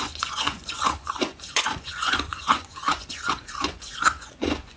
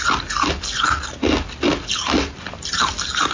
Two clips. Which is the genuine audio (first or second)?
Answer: second